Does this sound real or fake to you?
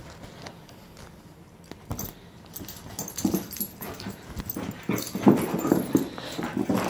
real